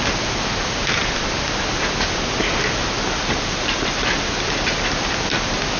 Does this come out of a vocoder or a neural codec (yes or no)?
no